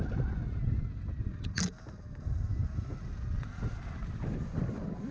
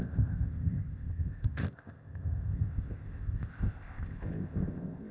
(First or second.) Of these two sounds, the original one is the first